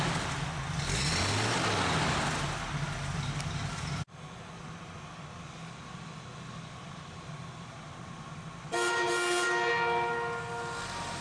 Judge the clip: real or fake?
real